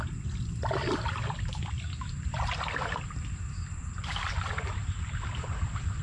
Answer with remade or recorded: recorded